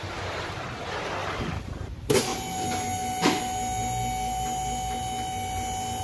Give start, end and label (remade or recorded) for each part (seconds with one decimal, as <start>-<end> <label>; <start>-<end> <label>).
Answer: 0.0-1.2 recorded; 1.2-1.7 remade; 1.7-6.0 recorded

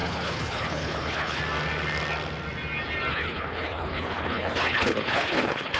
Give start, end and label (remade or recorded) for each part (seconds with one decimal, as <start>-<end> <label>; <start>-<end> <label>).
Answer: 0.0-1.4 remade; 1.4-3.1 recorded; 3.1-5.8 remade